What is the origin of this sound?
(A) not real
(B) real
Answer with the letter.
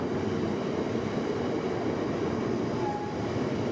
B